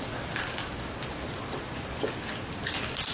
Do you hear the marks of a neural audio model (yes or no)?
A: no